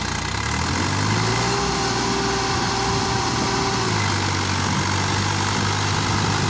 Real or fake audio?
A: real